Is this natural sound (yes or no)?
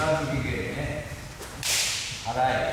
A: no